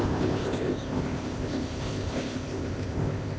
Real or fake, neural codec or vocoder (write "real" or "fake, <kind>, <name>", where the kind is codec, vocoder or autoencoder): fake, codec, ZipCodec